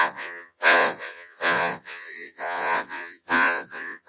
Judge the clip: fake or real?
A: fake